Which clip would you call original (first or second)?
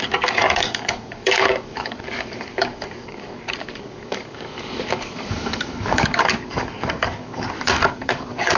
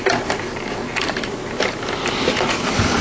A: second